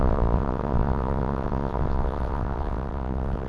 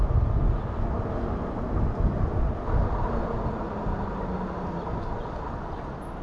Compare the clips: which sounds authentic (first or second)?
second